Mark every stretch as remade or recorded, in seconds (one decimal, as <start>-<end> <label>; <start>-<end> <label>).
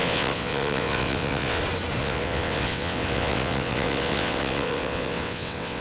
0.0-1.6 remade; 1.6-2.0 recorded; 2.0-5.8 remade